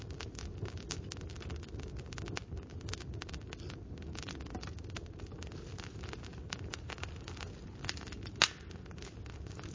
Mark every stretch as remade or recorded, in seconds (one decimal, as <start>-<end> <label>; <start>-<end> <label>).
0.0-6.3 recorded; 6.3-7.5 remade; 7.5-9.7 recorded